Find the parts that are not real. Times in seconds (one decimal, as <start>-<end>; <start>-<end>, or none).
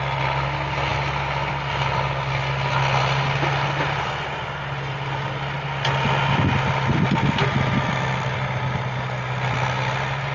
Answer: none